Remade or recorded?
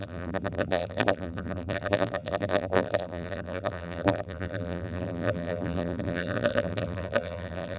remade